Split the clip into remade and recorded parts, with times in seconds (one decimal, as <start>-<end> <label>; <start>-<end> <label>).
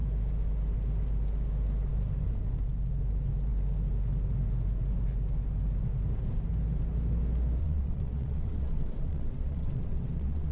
0.0-7.6 recorded; 7.6-10.5 remade